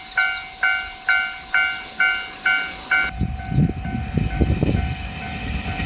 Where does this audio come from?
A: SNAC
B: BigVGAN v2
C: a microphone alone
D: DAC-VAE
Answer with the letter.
C